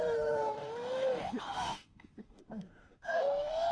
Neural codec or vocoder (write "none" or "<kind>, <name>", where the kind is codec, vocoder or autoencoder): autoencoder, DAC-VAE